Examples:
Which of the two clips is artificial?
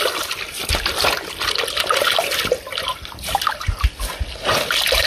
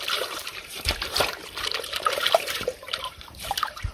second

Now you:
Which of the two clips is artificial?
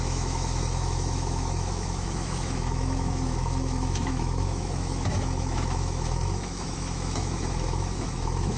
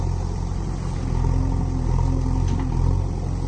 first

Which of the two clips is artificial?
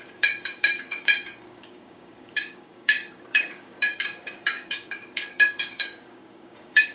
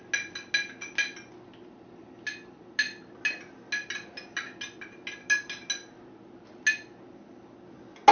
first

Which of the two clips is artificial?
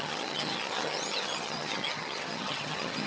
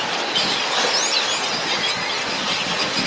first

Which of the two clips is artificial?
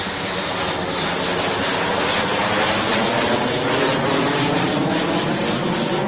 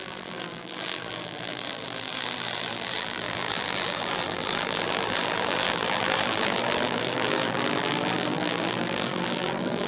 second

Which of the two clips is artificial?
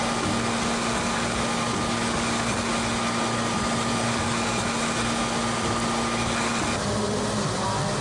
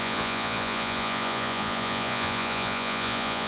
second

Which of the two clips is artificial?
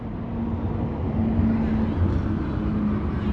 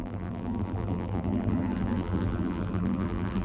second